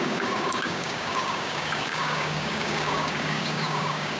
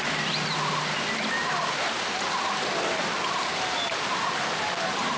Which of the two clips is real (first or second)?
second